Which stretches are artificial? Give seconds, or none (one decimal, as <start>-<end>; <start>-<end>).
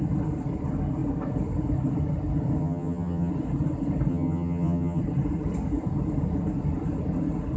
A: 2.6-3.3; 4.1-5.0